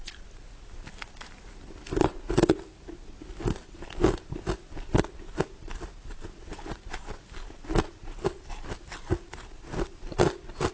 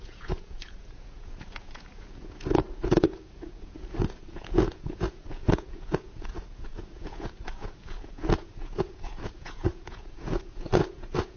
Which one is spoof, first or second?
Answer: second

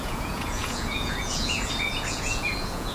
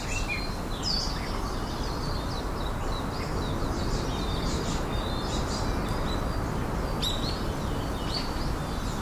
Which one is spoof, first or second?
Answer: first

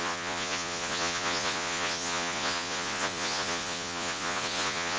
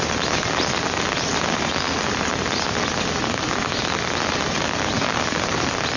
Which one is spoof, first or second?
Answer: first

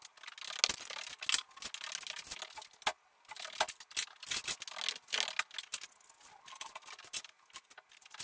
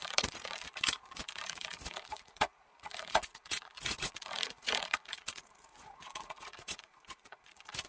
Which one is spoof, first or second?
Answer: second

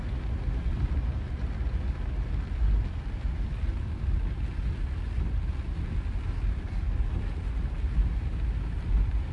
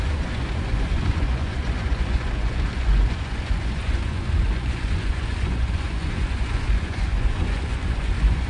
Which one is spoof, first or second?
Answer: second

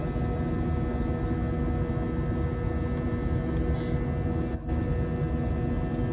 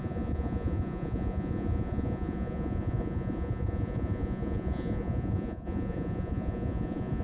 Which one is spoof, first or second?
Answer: second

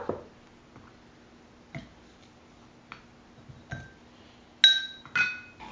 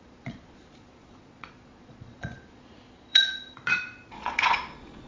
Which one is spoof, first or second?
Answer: second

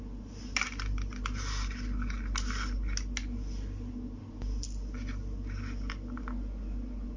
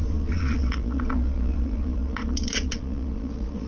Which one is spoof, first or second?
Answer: second